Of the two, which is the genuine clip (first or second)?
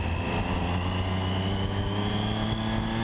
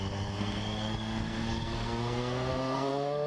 first